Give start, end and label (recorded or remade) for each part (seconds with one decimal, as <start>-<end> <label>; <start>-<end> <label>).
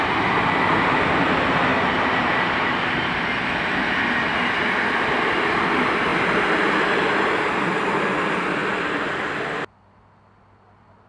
0.0-11.1 recorded